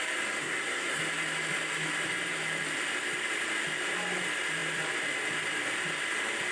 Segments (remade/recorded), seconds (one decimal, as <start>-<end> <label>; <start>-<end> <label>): 0.0-0.4 recorded; 0.4-1.0 remade; 1.0-6.5 recorded